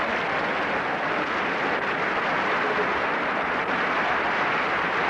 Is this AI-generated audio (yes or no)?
no